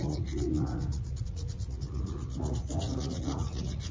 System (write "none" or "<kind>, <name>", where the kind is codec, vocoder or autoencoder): vocoder, Vocos